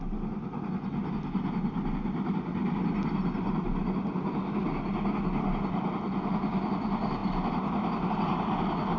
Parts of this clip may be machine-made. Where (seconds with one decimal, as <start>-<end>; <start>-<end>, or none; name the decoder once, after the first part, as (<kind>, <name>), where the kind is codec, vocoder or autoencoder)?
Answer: none